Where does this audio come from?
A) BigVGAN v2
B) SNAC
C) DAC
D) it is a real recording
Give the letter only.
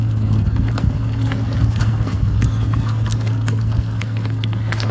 B